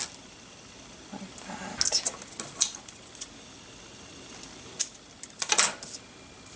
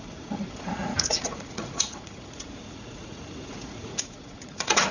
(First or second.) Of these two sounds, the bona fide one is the first